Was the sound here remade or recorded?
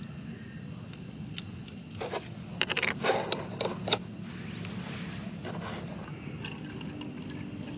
recorded